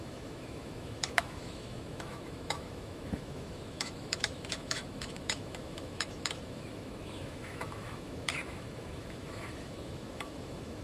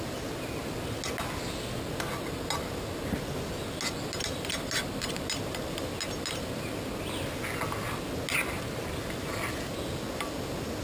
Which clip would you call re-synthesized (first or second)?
first